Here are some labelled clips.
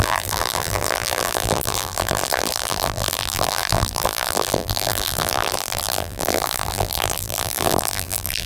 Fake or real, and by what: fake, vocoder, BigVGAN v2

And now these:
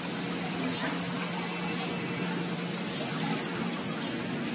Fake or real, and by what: real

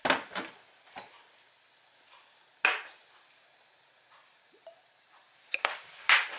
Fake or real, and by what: real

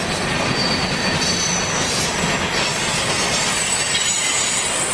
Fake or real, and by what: real